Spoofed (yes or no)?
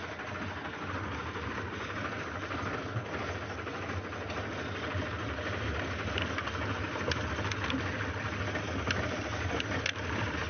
no